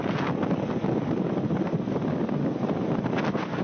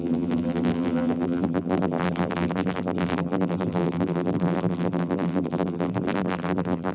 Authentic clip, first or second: first